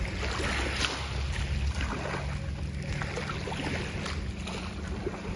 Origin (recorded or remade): recorded